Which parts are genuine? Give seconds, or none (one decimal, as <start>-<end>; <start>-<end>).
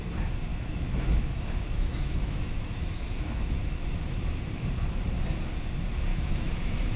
0.0-0.5; 4.2-6.1